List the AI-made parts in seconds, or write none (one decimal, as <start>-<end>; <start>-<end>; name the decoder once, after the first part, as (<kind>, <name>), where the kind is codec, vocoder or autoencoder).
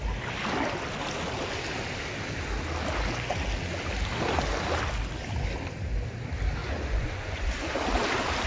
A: 6.6-7.5 (vocoder, Vocos)